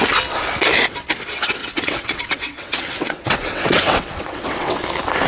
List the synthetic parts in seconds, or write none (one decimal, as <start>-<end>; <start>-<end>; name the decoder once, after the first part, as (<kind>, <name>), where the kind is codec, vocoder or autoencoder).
1.6-4.8 (vocoder, WaveNeXt)